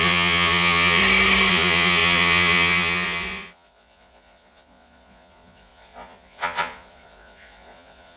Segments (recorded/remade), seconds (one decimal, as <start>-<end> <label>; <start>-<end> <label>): 0.0-1.0 remade; 1.0-1.5 recorded; 1.5-8.2 remade